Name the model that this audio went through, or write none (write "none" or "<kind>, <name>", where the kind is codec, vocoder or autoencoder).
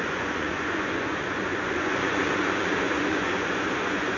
vocoder, Vocos